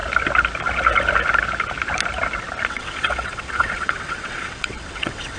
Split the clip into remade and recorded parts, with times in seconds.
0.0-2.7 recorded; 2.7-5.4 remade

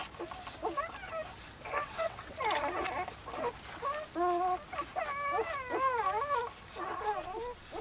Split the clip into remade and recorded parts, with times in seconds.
0.0-1.8 recorded; 1.8-2.4 remade; 2.4-7.8 recorded

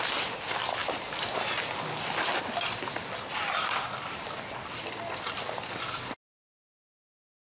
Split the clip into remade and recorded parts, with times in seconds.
0.0-7.6 recorded

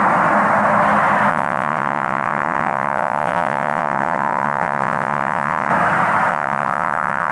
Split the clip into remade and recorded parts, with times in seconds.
0.0-1.3 recorded; 1.3-5.7 remade; 5.7-6.3 recorded; 6.3-7.3 remade

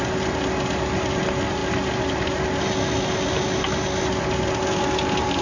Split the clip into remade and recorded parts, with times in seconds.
0.0-5.4 recorded

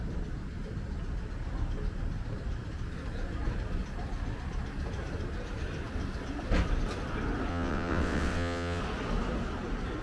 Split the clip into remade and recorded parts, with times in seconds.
0.0-7.5 recorded; 7.5-8.8 remade; 8.8-10.0 recorded